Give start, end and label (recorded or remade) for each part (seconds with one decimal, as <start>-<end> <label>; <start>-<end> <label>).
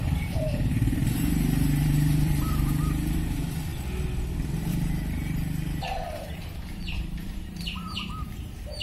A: 0.0-3.7 remade; 3.7-4.7 recorded; 4.7-8.8 remade